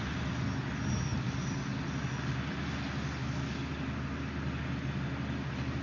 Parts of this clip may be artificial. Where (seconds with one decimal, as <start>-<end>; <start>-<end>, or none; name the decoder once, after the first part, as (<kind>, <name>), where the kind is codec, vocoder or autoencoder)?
none